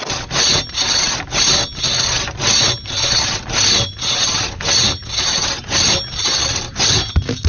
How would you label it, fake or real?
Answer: real